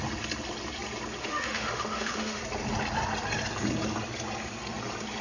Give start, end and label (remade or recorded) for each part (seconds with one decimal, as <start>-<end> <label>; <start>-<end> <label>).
0.0-1.2 recorded; 1.2-2.4 remade; 2.4-5.2 recorded